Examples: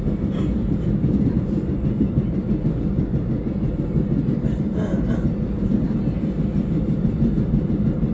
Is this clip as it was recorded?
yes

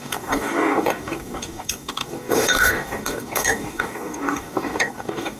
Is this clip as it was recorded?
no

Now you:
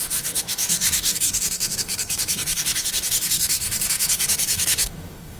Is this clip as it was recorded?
no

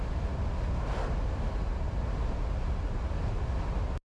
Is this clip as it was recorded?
yes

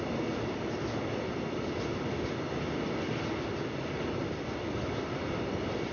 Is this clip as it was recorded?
yes